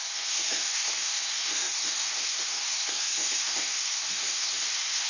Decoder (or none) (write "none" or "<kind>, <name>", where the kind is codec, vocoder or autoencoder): codec, SNAC